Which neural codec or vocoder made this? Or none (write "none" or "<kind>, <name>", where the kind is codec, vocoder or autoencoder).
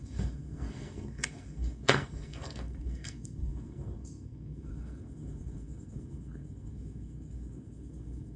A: codec, SNAC